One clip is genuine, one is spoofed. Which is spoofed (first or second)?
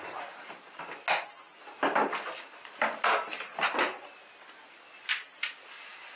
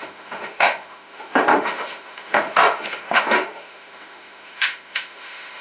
second